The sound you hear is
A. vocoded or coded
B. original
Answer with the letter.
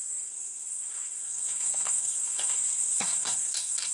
A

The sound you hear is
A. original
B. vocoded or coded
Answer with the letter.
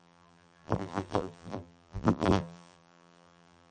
B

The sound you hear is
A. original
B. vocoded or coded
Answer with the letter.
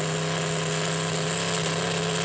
A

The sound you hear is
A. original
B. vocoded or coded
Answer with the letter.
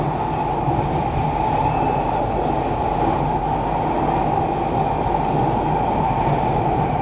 A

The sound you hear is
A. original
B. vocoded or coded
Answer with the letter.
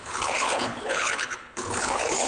B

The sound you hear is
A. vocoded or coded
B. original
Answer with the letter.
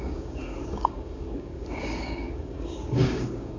A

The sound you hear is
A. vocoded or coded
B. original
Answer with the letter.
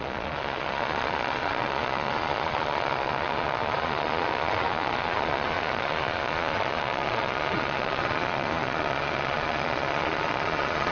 A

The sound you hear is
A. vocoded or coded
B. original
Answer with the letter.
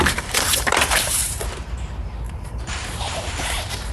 A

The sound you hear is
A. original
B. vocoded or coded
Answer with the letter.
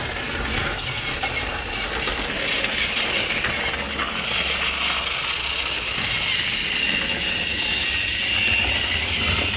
A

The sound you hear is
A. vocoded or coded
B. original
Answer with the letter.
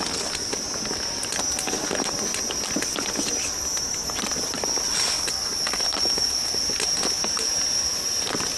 B